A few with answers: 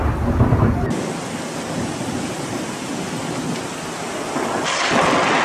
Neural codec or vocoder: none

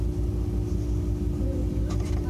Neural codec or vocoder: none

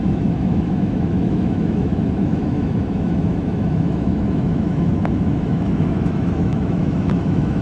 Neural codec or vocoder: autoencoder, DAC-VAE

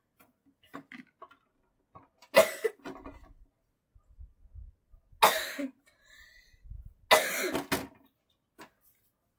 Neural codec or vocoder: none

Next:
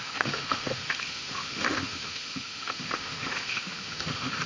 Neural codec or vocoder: autoencoder, DAC-VAE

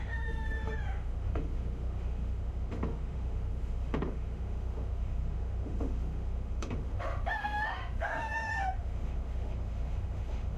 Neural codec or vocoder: autoencoder, DAC-VAE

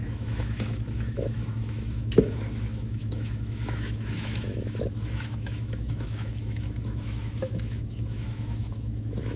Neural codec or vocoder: autoencoder, DAC-VAE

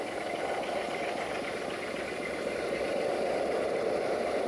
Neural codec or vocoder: none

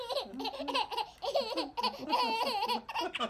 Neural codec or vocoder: none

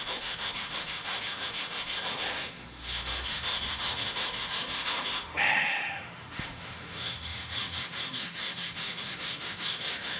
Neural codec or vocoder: autoencoder, DAC-VAE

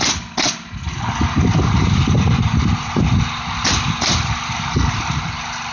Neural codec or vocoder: none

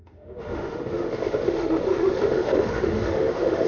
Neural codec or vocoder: autoencoder, DAC-VAE